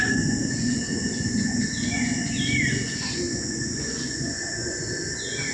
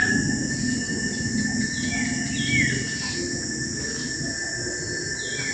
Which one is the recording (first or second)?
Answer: second